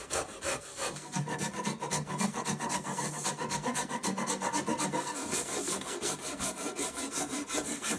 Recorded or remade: remade